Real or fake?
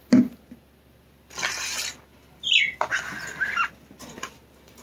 real